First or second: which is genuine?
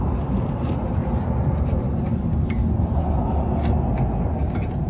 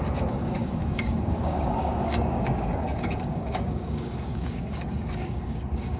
first